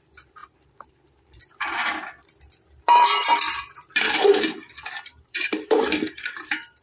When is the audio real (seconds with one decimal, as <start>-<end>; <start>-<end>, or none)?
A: 0.0-0.4; 4.5-5.1